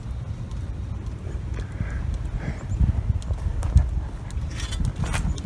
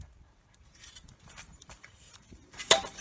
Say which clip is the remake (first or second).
second